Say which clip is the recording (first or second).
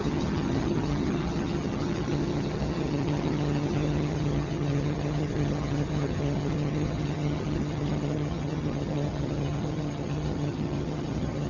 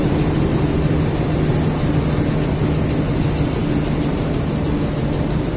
second